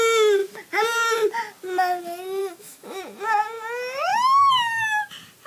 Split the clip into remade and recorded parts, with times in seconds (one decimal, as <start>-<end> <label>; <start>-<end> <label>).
0.0-2.4 recorded; 2.4-3.0 remade; 3.0-4.1 recorded; 4.1-5.0 remade; 5.0-5.5 recorded